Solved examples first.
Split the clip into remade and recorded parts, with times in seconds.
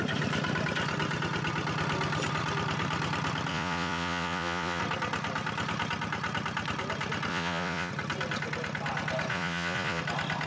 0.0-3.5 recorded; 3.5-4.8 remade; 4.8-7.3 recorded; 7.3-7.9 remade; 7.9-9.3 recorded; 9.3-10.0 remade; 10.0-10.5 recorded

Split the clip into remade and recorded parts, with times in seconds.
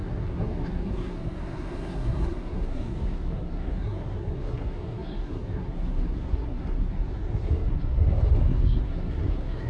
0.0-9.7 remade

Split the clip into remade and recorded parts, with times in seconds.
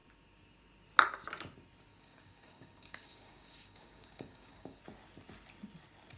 0.0-1.9 recorded; 1.9-4.8 remade; 4.8-6.2 recorded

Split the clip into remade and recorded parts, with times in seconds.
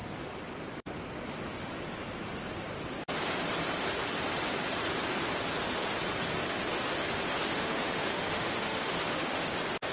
0.0-7.4 recorded; 7.4-9.5 remade; 9.5-9.9 recorded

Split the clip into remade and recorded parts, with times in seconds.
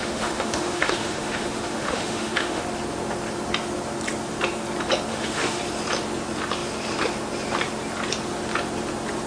0.0-2.6 remade; 2.6-5.1 recorded; 5.1-5.6 remade; 5.6-9.3 recorded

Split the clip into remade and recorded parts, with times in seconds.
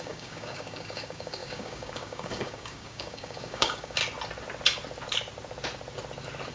0.0-4.0 remade; 4.0-6.5 recorded